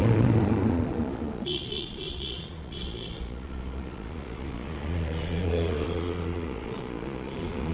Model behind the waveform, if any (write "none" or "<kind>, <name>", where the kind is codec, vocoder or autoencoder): vocoder, Vocos